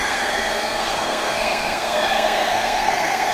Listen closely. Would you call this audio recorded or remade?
remade